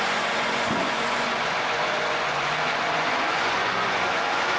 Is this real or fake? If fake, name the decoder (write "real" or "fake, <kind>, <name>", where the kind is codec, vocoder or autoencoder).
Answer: fake, vocoder, Vocos